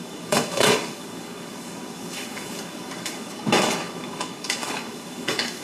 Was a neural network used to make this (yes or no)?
yes